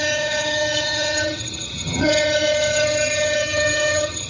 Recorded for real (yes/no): no